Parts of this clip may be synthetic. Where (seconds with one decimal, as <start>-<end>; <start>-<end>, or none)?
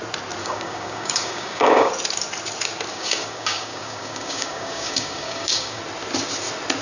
0.4-1.9; 2.9-5.8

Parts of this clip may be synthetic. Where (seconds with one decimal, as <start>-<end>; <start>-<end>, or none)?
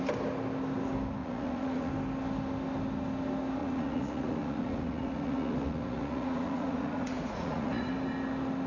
1.2-1.9; 3.6-7.9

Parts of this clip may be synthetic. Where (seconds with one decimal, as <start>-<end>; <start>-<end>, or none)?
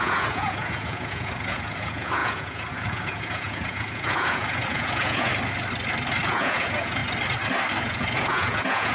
0.0-5.3; 6.3-7.0; 7.8-8.9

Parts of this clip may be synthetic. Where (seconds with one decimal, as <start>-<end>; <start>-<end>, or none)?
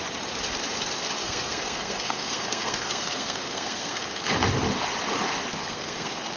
1.2-4.2; 5.5-6.4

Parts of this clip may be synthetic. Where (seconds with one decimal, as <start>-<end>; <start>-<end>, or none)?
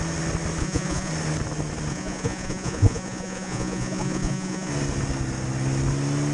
0.6-1.1; 1.9-4.7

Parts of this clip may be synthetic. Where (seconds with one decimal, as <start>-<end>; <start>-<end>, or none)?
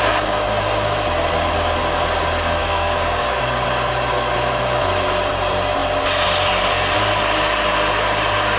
2.6-3.3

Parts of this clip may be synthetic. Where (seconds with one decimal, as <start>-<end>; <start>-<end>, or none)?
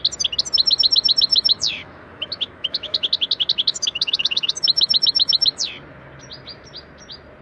1.3-5.7